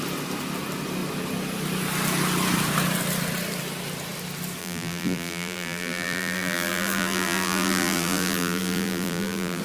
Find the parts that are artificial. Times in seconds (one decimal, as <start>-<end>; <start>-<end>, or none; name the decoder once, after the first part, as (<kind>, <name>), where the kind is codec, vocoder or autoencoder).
4.6-9.6 (vocoder, BigVGAN v2)

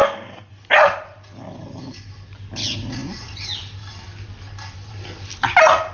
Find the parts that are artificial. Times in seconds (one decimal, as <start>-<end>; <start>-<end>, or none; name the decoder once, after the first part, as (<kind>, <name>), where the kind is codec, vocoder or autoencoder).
0.0-0.5 (codec, SNAC)

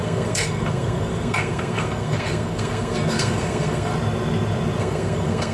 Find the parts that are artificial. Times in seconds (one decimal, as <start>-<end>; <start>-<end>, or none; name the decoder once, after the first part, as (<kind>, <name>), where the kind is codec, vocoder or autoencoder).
0.0-3.9 (codec, SNAC); 4.8-5.5

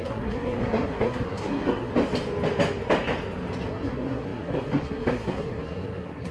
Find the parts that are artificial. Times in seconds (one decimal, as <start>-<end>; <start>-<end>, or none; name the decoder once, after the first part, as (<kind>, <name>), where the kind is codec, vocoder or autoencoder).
0.0-1.9 (codec, SNAC); 3.7-6.3

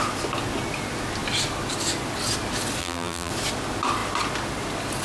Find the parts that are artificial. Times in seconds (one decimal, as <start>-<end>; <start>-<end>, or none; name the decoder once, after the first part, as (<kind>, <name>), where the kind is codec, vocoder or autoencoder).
2.8-3.3 (vocoder, BigVGAN v2)

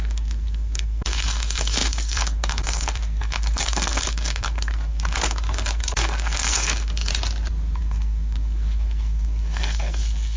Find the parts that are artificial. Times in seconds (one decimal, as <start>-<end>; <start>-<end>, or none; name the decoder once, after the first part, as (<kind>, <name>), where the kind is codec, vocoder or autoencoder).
0.0-7.1 (codec, SNAC); 7.8-10.4